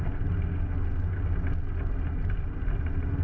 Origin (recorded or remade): recorded